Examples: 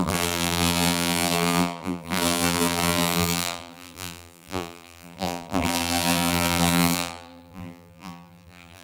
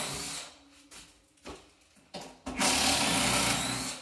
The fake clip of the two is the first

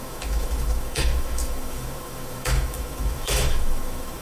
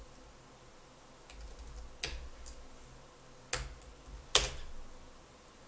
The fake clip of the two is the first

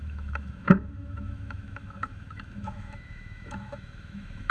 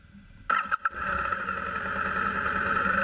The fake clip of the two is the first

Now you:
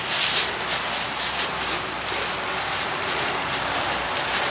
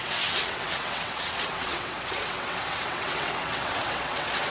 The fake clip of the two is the second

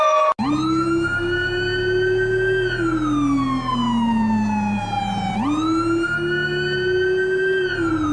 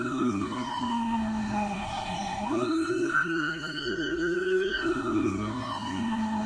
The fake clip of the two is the second